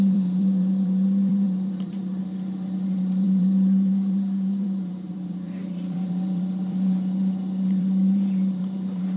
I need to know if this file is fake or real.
fake